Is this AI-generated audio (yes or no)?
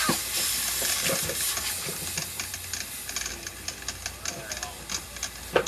no